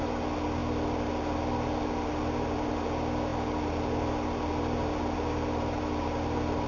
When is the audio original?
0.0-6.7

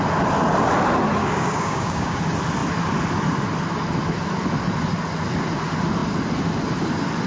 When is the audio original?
0.0-1.2; 2.2-7.3

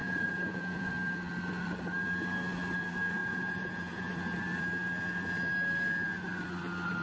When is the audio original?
0.9-3.2; 4.1-7.0

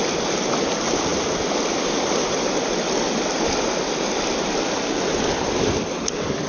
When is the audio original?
0.0-6.5

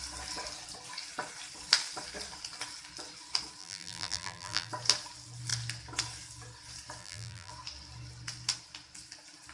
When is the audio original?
0.0-3.6; 4.7-7.0; 7.5-9.5

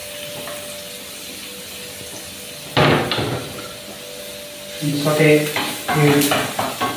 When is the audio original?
0.0-7.0

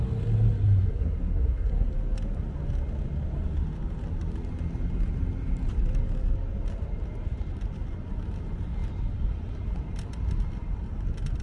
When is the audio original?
0.0-0.9; 1.9-11.4

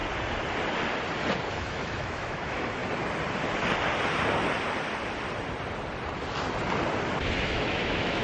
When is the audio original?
0.0-1.5; 2.8-7.4